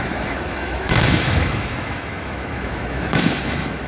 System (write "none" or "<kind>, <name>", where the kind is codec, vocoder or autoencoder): autoencoder, DAC-VAE